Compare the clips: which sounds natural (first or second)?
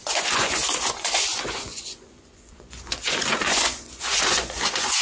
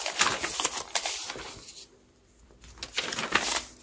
second